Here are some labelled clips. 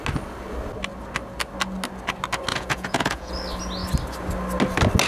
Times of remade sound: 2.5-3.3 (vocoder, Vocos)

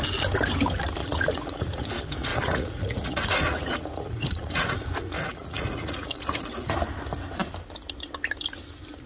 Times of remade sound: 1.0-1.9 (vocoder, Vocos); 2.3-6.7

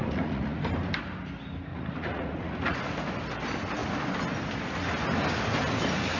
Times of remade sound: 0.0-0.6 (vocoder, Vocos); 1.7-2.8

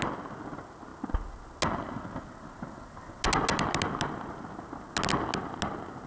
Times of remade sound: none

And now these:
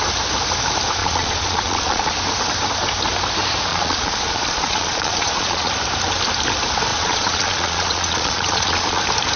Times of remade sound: 1.0-2.1 (vocoder, Vocos); 3.7-5.7; 6.9-9.0

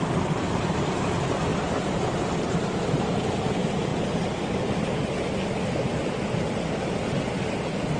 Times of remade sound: none

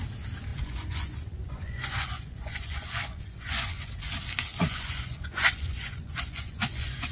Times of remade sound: 0.5-4.0 (vocoder, Vocos); 4.5-7.1

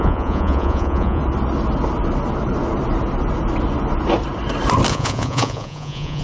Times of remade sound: 0.0-1.2 (vocoder, Vocos); 4.9-6.2